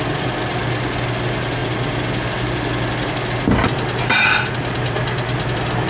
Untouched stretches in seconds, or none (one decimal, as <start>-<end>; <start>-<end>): 0.0-5.9